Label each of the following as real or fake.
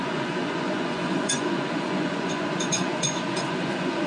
fake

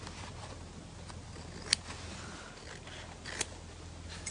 real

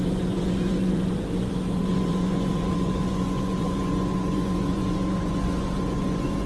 fake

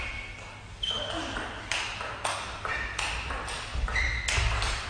real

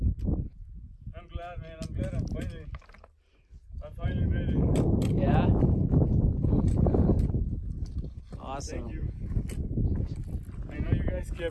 real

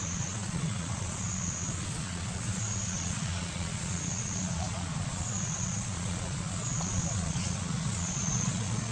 fake